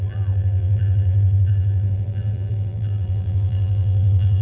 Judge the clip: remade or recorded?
remade